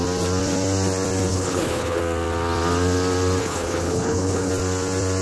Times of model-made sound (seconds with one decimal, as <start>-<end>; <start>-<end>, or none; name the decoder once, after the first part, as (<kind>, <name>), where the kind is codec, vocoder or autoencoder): 1.3-2.0 (codec, HILCodec); 3.4-4.5